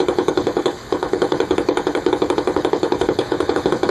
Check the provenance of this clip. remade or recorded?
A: remade